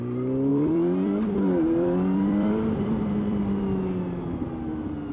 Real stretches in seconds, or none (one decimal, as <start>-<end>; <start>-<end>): 0.0-0.5; 3.6-5.1